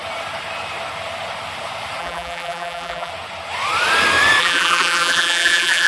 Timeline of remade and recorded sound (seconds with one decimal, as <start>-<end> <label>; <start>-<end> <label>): 0.0-2.0 recorded; 2.0-3.1 remade; 3.1-4.4 recorded; 4.4-5.9 remade